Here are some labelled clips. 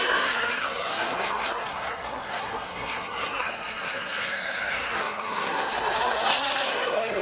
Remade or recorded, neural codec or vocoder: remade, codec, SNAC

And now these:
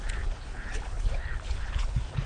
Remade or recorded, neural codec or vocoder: remade, codec, HILCodec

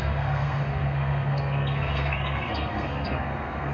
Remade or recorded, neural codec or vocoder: remade, codec, SNAC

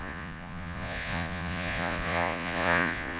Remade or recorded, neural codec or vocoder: remade, vocoder, Vocos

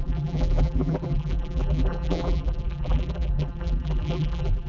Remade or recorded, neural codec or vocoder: remade, vocoder, BigVGAN v2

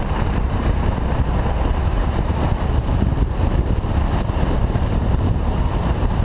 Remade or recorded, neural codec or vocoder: remade, vocoder, BigVGAN v2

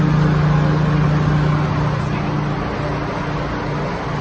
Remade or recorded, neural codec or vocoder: recorded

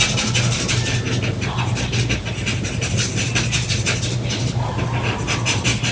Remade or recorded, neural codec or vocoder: recorded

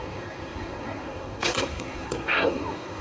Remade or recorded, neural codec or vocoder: remade, codec, SNAC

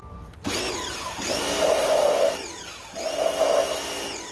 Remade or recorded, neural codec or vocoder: recorded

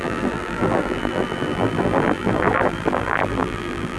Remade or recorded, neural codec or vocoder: remade, vocoder, BigVGAN v2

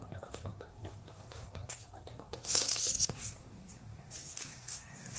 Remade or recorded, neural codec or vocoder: remade, codec, SNAC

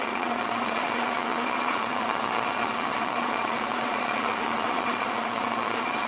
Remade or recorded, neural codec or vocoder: remade, vocoder, Vocos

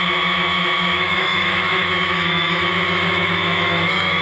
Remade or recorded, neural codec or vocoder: remade, autoencoder, DAC-VAE